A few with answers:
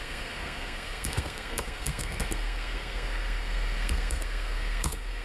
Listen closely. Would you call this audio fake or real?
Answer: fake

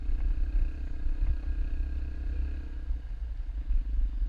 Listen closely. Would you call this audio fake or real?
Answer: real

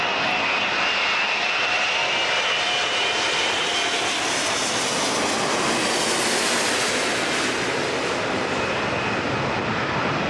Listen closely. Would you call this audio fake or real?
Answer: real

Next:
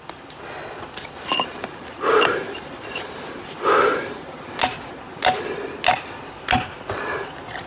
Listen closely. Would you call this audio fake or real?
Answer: real